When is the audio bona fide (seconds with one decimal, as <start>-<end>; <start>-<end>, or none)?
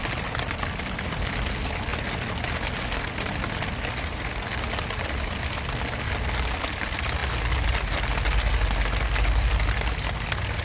0.0-10.6